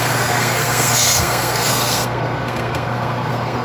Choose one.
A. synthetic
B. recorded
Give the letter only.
A